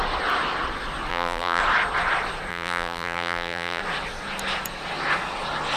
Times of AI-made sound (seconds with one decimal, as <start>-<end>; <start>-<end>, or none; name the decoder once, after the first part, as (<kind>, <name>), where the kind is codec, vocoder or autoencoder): 1.1-1.6 (vocoder, BigVGAN v2); 2.5-3.8

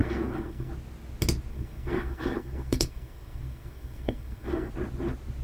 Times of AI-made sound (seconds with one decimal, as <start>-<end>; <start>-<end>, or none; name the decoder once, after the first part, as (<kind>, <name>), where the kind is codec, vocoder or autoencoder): 0.0-0.7 (codec, SNAC); 1.5-4.7

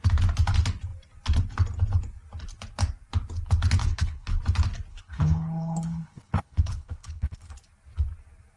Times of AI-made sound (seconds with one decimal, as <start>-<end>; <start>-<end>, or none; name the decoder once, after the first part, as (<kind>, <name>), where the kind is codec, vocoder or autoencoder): 3.8-4.4 (codec, HILCodec); 4.9-7.5

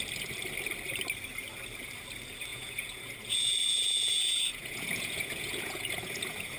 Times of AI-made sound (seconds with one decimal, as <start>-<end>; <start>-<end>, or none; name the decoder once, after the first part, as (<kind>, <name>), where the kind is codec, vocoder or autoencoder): 2.5-6.6 (vocoder, Vocos)

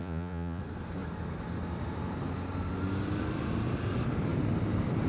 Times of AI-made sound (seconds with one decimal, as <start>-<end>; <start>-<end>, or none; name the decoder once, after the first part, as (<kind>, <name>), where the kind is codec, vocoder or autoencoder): 0.0-0.6 (vocoder, Vocos)